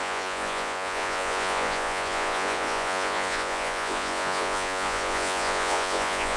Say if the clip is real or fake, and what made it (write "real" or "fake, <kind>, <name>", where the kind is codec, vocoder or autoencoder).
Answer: fake, vocoder, Vocos